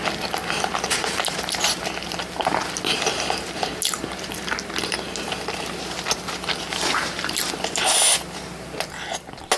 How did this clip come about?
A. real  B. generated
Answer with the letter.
A